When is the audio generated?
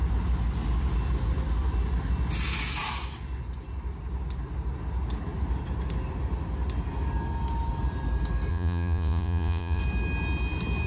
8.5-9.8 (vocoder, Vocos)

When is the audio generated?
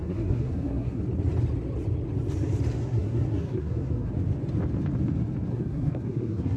0.0-1.0 (codec, SNAC); 2.8-4.1; 5.5-6.6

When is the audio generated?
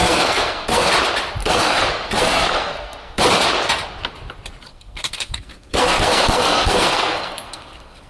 0.0-0.9 (codec, SNAC); 1.4-3.2; 4.7-8.1